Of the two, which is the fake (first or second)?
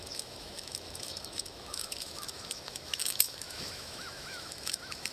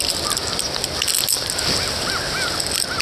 first